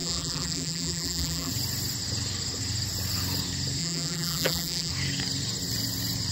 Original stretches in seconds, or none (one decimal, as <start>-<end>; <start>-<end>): 1.5-3.8; 4.9-6.3